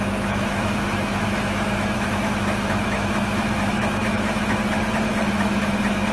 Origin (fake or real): fake